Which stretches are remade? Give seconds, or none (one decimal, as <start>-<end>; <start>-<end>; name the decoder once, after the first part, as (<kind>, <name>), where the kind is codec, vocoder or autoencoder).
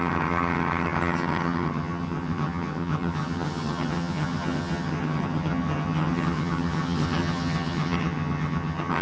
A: 0.0-9.0 (vocoder, HiFi-GAN)